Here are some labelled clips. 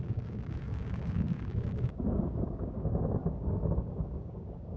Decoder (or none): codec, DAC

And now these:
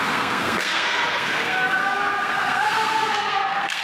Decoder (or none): codec, SNAC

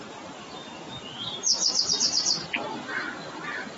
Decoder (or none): none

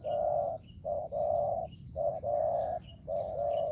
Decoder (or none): none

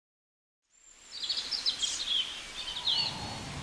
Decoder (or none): none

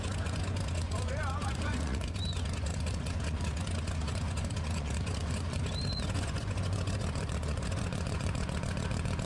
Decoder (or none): vocoder, Vocos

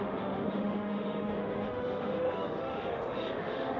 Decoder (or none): autoencoder, DAC-VAE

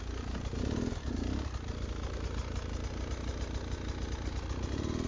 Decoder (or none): none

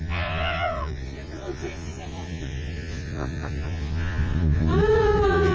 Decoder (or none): vocoder, Vocos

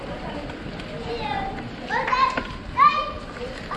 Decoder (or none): none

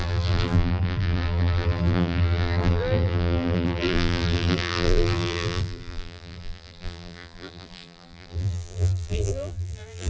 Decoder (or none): vocoder, BigVGAN v2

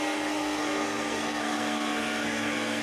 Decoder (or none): codec, SNAC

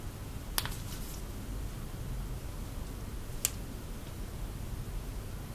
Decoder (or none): none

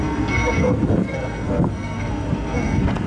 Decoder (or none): codec, SNAC